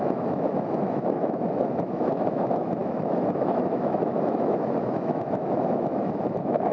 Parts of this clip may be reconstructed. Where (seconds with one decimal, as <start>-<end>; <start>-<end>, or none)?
0.0-6.7